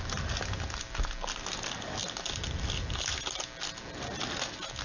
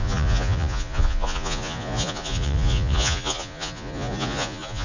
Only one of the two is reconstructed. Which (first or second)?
second